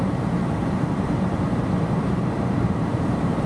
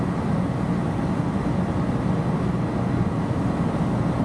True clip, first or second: second